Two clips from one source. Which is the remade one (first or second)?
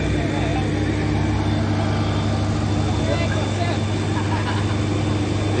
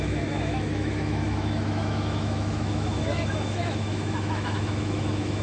second